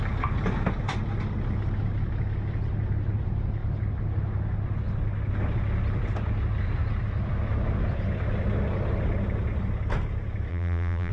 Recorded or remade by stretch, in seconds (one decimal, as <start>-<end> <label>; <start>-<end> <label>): 0.0-10.5 recorded; 10.5-11.1 remade